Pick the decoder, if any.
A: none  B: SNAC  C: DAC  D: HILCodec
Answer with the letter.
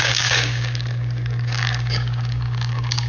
C